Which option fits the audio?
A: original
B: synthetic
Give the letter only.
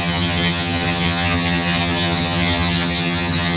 B